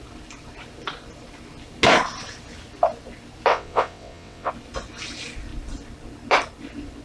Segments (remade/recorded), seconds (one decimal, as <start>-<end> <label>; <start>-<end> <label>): 0.0-3.5 recorded; 3.5-4.5 remade; 4.5-7.0 recorded